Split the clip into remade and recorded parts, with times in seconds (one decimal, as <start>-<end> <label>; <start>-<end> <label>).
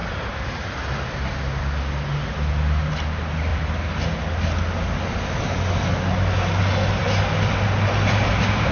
0.0-8.7 recorded